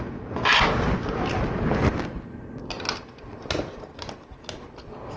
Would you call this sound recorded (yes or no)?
yes